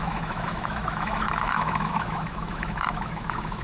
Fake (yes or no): yes